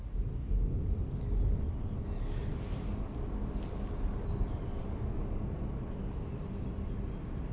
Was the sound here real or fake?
real